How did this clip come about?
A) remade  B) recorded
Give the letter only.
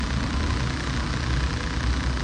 B